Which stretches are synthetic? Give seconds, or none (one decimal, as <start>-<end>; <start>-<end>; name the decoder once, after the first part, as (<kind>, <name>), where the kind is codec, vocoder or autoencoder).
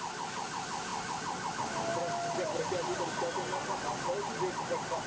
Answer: none